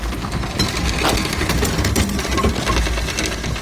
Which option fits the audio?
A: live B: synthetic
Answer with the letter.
A